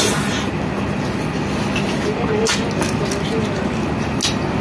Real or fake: real